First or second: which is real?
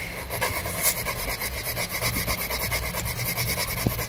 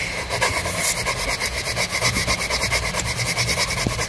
first